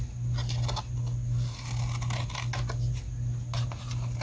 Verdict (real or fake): real